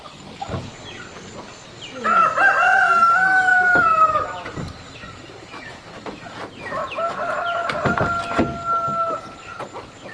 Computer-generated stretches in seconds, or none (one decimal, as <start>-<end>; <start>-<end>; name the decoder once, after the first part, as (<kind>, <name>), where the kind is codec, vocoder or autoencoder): 3.5-6.6 (vocoder, BigVGAN v2); 7.6-8.2